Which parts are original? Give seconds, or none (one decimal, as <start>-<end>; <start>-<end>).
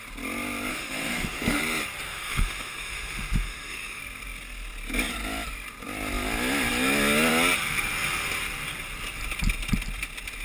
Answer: 0.0-0.7; 1.6-2.1; 4.0-10.4